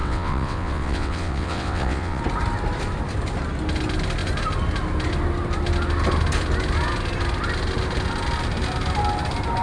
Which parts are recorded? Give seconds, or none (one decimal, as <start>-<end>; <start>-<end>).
2.2-9.6